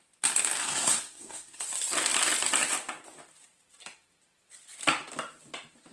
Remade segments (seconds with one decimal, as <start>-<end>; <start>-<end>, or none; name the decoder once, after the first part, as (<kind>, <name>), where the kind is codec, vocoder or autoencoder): 0.6-1.6 (codec, SNAC)